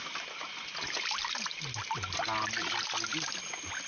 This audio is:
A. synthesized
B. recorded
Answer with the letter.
B